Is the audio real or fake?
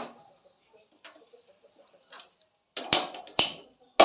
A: real